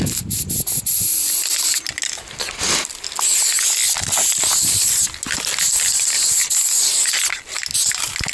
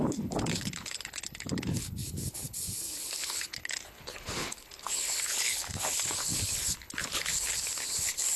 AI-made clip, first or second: second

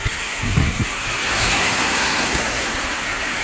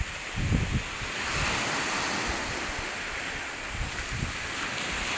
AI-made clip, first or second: first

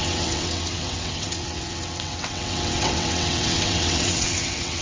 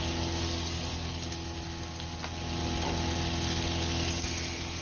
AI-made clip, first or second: first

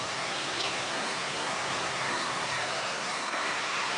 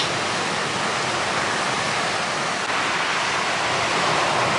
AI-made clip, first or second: first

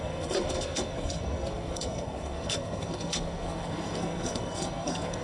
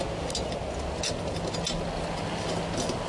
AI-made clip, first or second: first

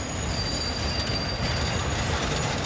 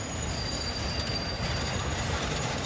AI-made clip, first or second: second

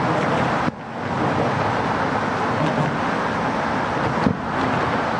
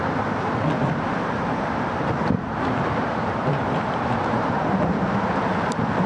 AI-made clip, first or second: second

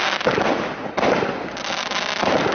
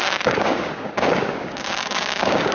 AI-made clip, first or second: second